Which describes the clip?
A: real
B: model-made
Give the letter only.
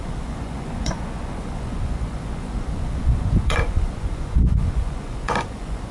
B